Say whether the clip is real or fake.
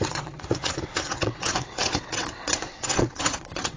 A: fake